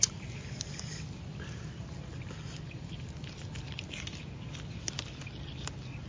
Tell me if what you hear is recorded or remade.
recorded